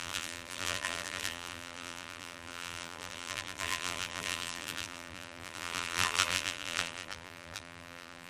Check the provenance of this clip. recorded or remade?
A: remade